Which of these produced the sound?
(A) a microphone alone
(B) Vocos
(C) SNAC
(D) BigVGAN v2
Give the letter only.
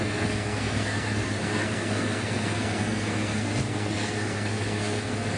C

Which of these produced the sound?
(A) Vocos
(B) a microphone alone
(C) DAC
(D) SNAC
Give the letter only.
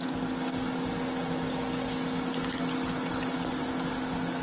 B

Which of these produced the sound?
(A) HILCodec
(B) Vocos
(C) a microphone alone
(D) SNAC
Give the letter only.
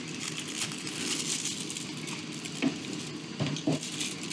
C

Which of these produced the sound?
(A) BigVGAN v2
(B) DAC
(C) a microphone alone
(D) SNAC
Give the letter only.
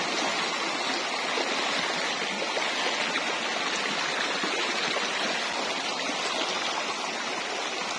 C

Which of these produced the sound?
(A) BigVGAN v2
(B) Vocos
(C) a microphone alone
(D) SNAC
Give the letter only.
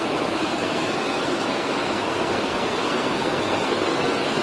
D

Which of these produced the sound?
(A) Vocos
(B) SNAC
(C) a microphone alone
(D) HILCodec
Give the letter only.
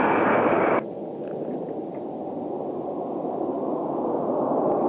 C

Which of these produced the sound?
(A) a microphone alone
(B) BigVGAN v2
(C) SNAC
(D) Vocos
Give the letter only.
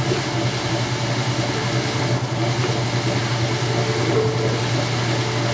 A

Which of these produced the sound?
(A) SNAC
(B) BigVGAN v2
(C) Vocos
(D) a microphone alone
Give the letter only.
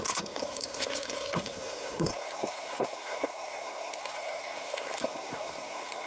A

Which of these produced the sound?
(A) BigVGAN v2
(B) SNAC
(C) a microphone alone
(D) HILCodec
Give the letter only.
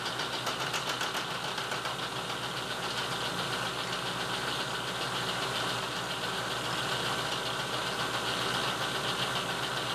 C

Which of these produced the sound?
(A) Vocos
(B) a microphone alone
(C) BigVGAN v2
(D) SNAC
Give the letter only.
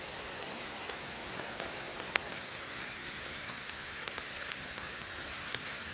D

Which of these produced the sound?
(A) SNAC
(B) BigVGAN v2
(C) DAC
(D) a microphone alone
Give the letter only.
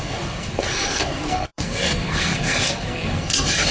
A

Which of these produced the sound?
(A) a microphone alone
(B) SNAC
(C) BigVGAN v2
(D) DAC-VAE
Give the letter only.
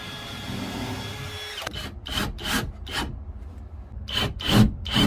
A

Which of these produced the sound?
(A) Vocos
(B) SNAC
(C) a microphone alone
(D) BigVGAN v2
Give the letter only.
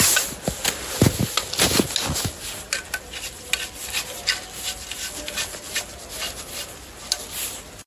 C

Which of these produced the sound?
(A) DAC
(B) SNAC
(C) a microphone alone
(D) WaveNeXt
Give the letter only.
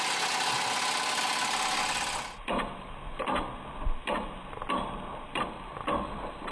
C